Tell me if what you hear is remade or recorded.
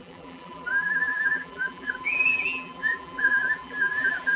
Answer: remade